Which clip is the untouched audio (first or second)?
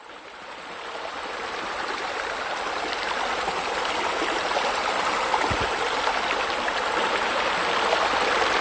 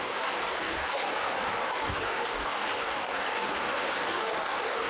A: first